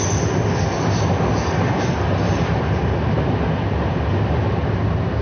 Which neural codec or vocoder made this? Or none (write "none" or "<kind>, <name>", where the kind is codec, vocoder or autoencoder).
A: none